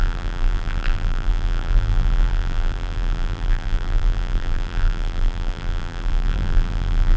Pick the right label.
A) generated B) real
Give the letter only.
A